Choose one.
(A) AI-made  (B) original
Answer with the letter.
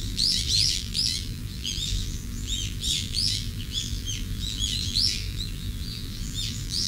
A